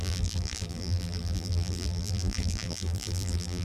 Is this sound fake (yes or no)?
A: yes